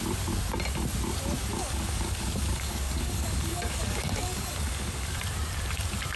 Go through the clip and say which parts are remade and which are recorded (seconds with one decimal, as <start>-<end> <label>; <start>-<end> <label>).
0.0-1.5 recorded; 1.5-5.2 remade; 5.2-6.2 recorded

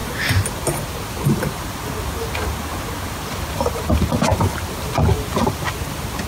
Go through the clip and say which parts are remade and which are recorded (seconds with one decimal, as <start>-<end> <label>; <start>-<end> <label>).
0.0-6.3 recorded

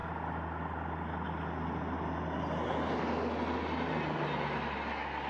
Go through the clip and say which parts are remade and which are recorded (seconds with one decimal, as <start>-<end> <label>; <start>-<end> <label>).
0.0-5.3 recorded

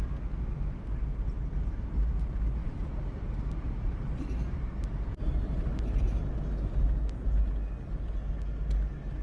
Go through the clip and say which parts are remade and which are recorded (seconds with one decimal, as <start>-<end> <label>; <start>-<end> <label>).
0.0-1.0 recorded; 1.0-1.8 remade; 1.8-2.6 recorded; 2.6-6.2 remade; 6.2-9.2 recorded

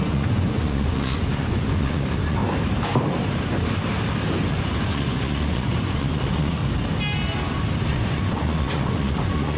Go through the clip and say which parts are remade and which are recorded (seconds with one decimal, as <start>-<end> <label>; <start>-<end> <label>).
0.0-2.4 remade; 2.4-4.5 recorded; 4.5-6.6 remade; 6.6-7.9 recorded; 7.9-9.6 remade

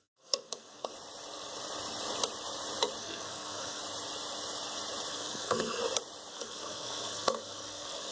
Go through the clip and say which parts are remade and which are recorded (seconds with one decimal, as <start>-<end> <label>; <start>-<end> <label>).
0.0-0.9 remade; 0.9-3.0 recorded; 3.0-3.8 remade; 3.8-5.1 recorded; 5.1-5.8 remade; 5.8-6.3 recorded; 6.3-8.1 remade